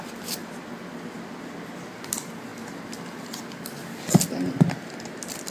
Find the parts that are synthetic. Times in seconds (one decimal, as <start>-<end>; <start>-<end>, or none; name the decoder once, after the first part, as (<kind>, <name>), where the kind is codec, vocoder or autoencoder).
none